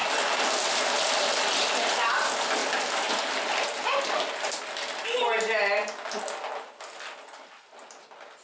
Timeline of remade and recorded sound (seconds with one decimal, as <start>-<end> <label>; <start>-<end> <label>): 0.0-8.4 recorded

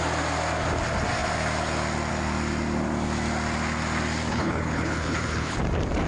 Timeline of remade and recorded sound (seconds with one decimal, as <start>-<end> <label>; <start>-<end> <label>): 0.0-4.3 recorded; 4.3-5.6 remade; 5.6-6.1 recorded